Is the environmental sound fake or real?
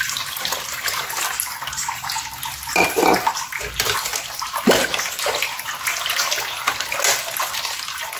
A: real